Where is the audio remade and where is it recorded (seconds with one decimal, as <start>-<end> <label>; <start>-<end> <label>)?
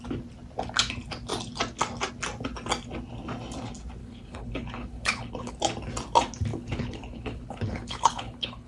0.0-4.0 recorded; 4.0-5.5 remade; 5.5-6.5 recorded; 6.5-8.7 remade